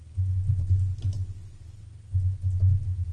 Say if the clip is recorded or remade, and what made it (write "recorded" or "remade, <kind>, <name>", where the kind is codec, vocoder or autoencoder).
recorded